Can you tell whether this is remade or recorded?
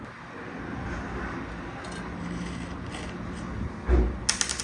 recorded